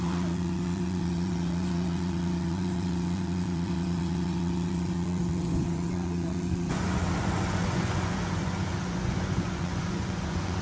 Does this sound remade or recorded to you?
remade